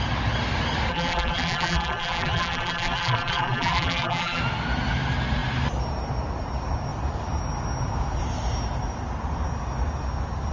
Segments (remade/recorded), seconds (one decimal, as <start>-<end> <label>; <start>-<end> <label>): 0.0-0.9 recorded; 0.9-4.4 remade; 4.4-10.5 recorded